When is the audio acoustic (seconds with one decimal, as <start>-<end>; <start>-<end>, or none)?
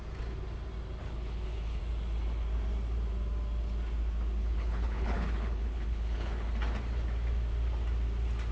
0.0-1.0; 1.8-4.4; 6.5-8.5